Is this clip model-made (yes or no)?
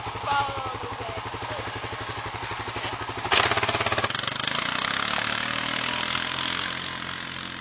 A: no